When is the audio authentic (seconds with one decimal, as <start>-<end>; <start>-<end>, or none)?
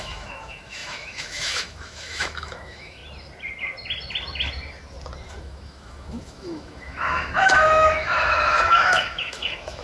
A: 3.0-5.4